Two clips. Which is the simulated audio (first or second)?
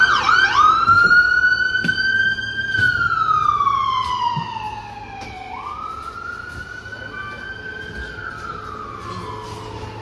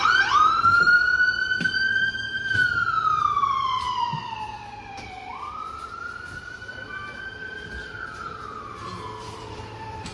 second